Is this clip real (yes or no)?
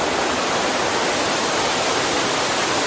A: yes